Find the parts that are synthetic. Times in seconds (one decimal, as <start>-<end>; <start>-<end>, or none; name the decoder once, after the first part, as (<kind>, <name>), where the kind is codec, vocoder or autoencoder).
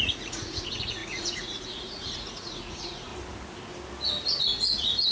0.0-3.1 (vocoder, Vocos); 4.4-5.1